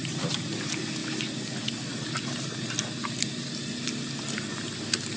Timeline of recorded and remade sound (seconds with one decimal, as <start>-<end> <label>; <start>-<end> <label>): 0.0-0.6 remade; 0.6-5.2 recorded